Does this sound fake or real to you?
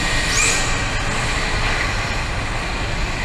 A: real